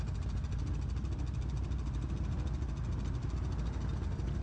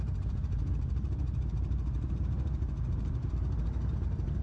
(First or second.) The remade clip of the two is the second